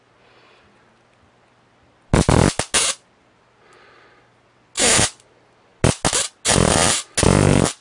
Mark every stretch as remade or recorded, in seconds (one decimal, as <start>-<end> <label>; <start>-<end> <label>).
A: 0.0-7.8 recorded